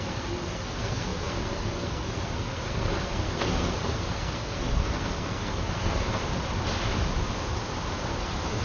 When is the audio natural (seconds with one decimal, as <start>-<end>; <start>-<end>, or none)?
6.2-8.0

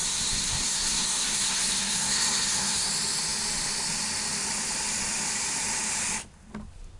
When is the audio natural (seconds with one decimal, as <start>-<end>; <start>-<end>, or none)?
2.9-7.0

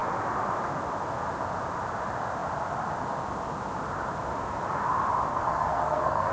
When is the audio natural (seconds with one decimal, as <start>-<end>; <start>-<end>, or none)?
0.0-5.3

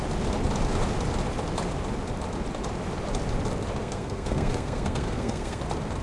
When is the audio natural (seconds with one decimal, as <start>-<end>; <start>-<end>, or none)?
0.0-3.8; 5.6-6.0

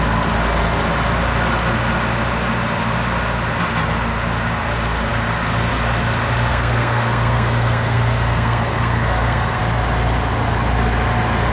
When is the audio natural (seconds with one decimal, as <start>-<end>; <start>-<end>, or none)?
0.0-6.5; 9.6-11.5